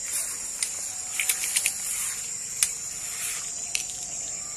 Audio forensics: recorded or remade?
recorded